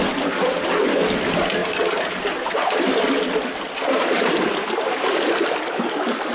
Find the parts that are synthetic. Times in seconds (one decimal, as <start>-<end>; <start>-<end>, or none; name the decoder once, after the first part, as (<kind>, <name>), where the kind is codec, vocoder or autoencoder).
none